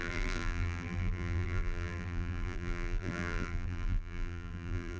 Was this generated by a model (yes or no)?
yes